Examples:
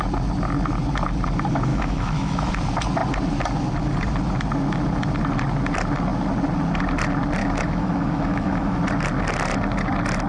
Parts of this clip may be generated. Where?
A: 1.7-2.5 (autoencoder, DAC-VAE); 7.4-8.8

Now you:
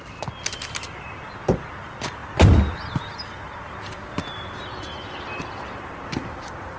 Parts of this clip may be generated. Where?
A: none

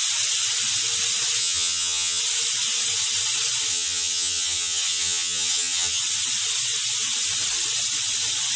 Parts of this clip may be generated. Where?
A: 1.4-2.2 (vocoder, HiFi-GAN); 3.7-6.0

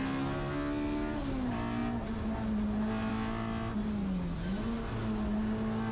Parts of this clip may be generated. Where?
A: none

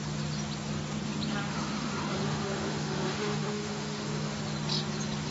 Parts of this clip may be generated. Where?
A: 1.5-4.4 (autoencoder, DAC-VAE)

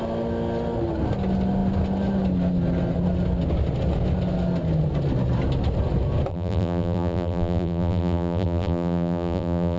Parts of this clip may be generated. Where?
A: 6.3-9.8 (vocoder, BigVGAN v2)

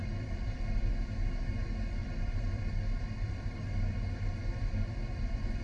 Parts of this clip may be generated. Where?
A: 0.0-0.9 (vocoder, BigVGAN v2); 2.0-5.6